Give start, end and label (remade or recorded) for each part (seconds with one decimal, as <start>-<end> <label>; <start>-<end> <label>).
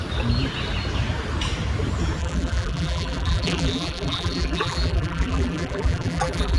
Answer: 0.0-2.2 recorded; 2.2-6.6 remade